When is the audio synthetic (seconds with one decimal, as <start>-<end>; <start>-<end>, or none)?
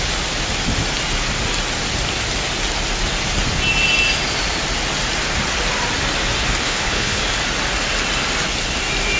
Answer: 6.6-7.2